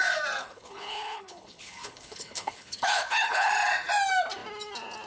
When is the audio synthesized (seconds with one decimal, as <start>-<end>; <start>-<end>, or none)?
0.4-3.5